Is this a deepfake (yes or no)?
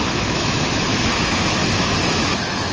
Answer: yes